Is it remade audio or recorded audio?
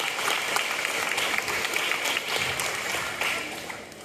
recorded